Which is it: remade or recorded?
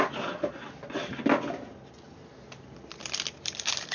recorded